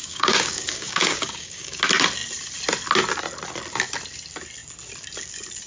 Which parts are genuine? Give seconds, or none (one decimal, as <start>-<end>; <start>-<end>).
1.8-5.7